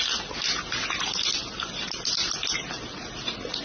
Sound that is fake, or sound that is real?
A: real